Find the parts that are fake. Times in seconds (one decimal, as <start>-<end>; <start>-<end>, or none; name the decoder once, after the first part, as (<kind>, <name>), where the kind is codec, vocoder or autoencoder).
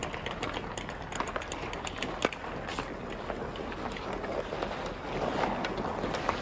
none